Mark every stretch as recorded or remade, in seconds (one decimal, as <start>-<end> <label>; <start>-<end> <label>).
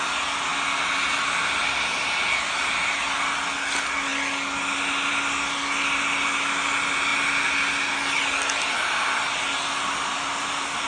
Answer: 0.0-10.9 recorded